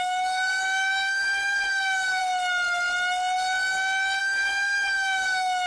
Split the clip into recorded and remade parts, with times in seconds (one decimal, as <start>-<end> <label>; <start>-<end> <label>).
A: 0.0-2.2 remade; 2.2-4.2 recorded; 4.2-5.7 remade

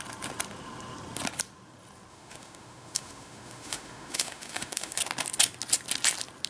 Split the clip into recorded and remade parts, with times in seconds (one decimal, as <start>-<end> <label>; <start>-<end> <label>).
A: 0.0-2.1 recorded; 2.1-5.0 remade; 5.0-6.5 recorded

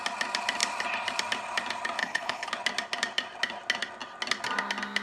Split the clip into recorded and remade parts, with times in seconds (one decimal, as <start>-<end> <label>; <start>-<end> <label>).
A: 0.0-2.0 recorded; 2.0-2.5 remade; 2.5-5.0 recorded

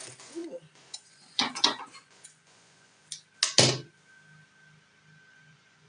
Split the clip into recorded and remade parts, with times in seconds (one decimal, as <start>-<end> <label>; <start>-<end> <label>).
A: 0.0-3.0 remade; 3.0-5.3 recorded; 5.3-5.9 remade

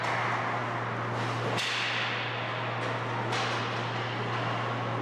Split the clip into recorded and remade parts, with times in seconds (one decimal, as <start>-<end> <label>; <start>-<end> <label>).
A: 0.0-5.0 recorded

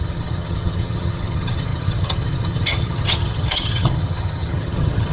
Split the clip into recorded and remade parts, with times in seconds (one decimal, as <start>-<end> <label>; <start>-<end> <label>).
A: 0.0-5.1 remade

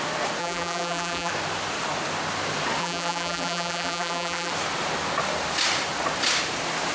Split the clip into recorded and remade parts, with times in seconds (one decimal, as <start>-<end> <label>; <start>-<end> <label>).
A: 0.0-0.4 recorded; 0.4-1.3 remade; 1.3-2.8 recorded; 2.8-4.5 remade; 4.5-6.9 recorded